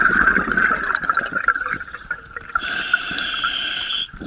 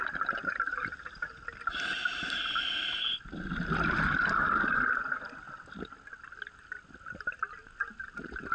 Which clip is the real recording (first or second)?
second